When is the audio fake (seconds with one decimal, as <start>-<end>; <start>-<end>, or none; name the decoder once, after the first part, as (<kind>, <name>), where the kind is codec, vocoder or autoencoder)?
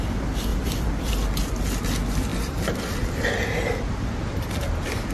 0.5-1.5 (vocoder, BigVGAN v2); 2.3-4.2